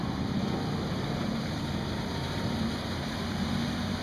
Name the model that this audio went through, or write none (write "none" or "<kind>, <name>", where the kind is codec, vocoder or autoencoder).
vocoder, BigVGAN v2